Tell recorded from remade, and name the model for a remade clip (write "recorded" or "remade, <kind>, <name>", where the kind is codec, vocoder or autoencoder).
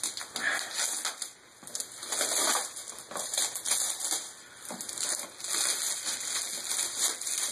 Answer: recorded